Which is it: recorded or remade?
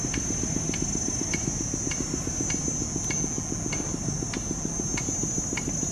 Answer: recorded